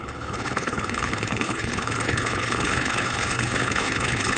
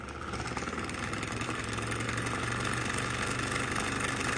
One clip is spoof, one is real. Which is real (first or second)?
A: second